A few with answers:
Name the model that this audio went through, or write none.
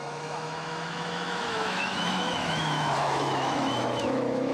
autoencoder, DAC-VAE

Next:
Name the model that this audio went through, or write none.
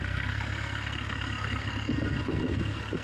codec, SNAC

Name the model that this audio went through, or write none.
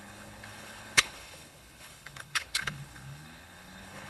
codec, HILCodec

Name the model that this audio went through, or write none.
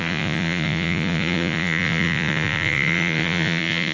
vocoder, Vocos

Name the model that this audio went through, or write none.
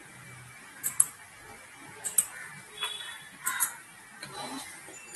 none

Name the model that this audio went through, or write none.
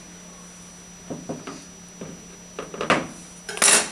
none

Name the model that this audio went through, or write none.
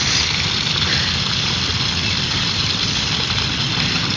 none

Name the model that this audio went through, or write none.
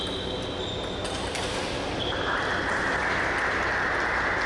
none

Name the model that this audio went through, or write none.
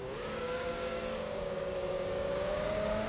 codec, DAC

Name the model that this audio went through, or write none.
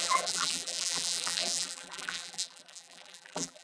vocoder, BigVGAN v2